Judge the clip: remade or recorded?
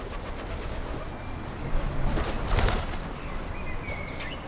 recorded